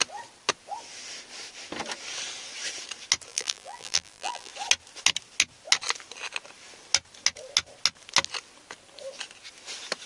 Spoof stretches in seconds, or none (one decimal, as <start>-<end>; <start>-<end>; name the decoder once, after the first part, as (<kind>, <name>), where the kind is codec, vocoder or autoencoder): 3.3-4.5 (vocoder, BigVGAN v2)